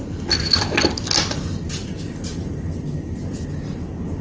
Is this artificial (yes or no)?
no